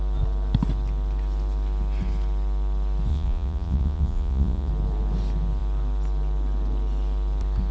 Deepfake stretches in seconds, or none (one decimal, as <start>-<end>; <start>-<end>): 3.1-4.7